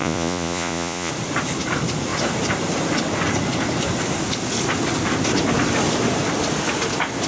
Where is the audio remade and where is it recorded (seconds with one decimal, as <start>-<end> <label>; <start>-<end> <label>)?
0.0-1.1 remade; 1.1-7.3 recorded